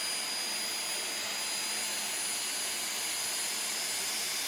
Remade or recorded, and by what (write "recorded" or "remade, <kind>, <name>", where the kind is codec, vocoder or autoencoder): recorded